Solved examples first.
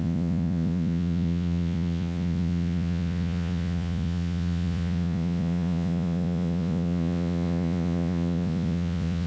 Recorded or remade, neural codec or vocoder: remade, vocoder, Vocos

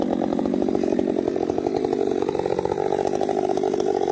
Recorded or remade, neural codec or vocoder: remade, vocoder, BigVGAN v2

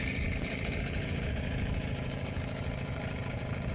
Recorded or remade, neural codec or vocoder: remade, vocoder, Vocos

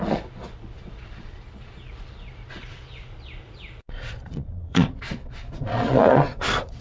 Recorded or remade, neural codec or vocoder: remade, vocoder, Vocos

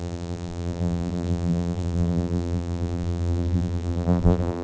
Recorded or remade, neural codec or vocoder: remade, vocoder, BigVGAN v2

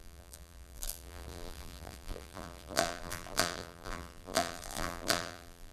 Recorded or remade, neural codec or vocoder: remade, vocoder, BigVGAN v2